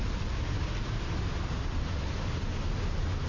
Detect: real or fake real